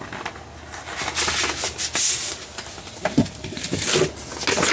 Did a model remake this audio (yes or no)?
no